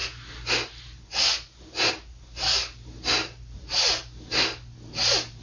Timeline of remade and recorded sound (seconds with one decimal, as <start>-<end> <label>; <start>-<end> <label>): 0.0-5.4 recorded